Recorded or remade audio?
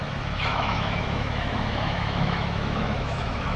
remade